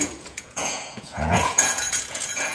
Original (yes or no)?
no